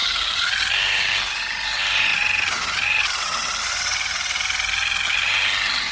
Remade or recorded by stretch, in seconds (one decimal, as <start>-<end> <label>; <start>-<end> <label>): 0.0-5.9 recorded